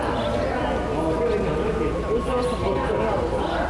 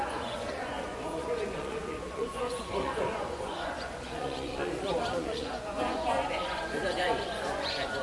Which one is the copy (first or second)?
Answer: second